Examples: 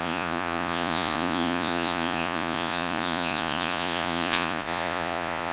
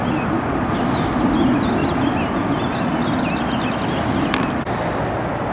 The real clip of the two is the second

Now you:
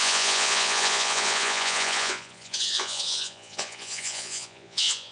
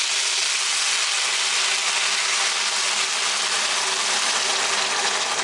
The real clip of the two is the second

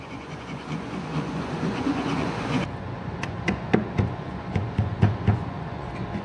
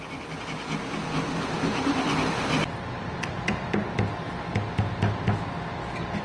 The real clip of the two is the second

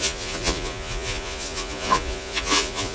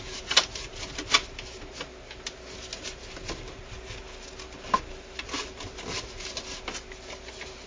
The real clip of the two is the second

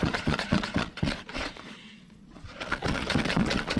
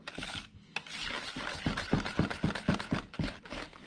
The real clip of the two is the second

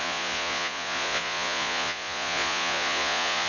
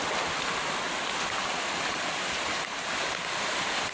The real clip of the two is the second